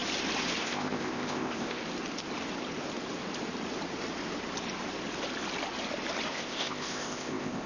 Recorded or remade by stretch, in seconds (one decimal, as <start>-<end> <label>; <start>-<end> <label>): 0.0-0.6 recorded; 0.6-1.8 remade; 1.8-6.3 recorded; 6.3-7.7 remade